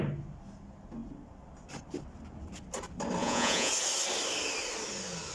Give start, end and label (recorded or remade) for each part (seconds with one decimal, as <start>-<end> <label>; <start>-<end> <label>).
0.0-3.2 recorded; 3.2-3.7 remade; 3.7-5.3 recorded